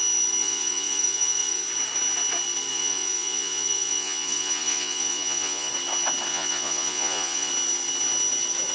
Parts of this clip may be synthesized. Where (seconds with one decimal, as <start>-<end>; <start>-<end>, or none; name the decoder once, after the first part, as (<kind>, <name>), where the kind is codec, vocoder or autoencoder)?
0.4-1.6 (vocoder, Vocos); 2.7-5.7; 6.3-7.5